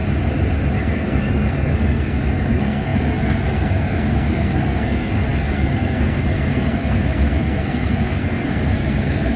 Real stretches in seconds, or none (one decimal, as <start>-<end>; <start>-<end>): 0.0-0.8